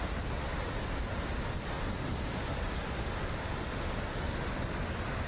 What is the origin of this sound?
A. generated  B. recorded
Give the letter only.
B